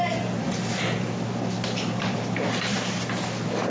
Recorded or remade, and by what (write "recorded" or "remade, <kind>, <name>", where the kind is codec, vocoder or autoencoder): recorded